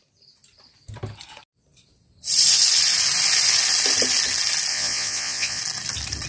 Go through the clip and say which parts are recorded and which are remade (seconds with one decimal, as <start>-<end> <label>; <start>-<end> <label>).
0.0-4.7 recorded; 4.7-5.6 remade; 5.6-6.3 recorded

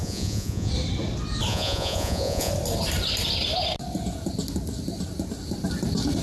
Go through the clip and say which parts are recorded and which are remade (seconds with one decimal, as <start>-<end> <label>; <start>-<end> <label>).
0.0-0.7 remade; 0.7-1.5 recorded; 1.5-2.5 remade; 2.5-6.2 recorded

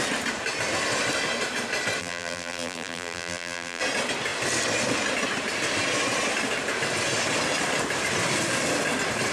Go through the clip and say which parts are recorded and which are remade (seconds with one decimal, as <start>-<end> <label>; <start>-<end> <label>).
0.0-2.0 recorded; 2.0-3.8 remade; 3.8-9.3 recorded

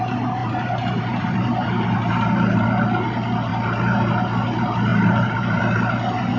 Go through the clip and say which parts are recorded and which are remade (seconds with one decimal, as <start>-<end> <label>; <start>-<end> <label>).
0.0-0.4 recorded; 0.4-2.8 remade; 2.8-3.5 recorded; 3.5-4.1 remade; 4.1-4.9 recorded; 4.9-5.6 remade; 5.6-6.4 recorded

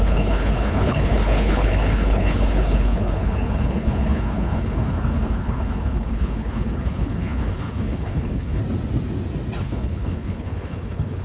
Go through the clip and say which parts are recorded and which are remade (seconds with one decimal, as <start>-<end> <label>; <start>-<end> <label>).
0.0-8.6 remade; 8.6-9.6 recorded; 9.6-11.2 remade

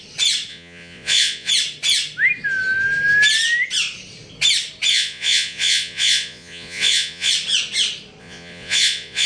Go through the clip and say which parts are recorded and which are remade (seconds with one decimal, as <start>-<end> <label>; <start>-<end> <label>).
0.0-0.5 recorded; 0.5-1.5 remade; 1.5-4.9 recorded; 4.9-7.3 remade; 7.3-8.2 recorded; 8.2-9.3 remade

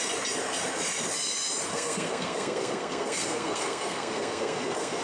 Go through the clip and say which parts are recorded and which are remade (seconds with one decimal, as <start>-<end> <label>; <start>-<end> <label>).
0.0-1.7 recorded; 1.7-5.0 remade